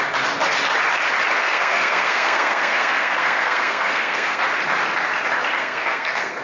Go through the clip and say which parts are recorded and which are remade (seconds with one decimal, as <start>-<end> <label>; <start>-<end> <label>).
0.0-1.4 recorded; 1.4-4.4 remade; 4.4-5.6 recorded; 5.6-6.4 remade